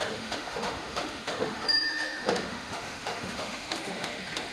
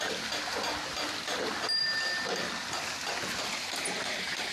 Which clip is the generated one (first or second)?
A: first